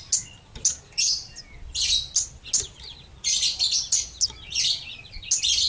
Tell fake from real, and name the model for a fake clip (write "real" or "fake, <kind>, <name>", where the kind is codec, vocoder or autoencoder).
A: real